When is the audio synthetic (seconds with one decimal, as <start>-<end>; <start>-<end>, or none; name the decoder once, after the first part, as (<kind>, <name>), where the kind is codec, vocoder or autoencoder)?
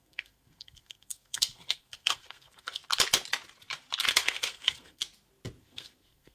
0.0-2.8 (codec, SNAC); 4.1-5.0; 5.6-6.3